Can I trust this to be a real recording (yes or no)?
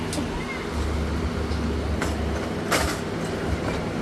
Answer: yes